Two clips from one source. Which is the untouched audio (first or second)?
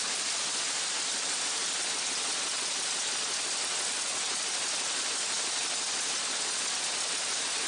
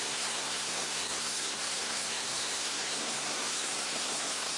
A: first